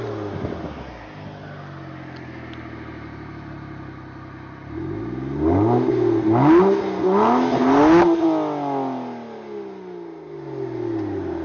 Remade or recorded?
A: recorded